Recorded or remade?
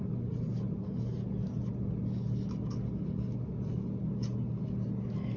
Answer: recorded